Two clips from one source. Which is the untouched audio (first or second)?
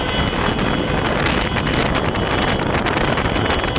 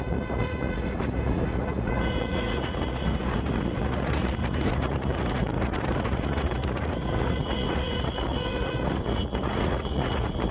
first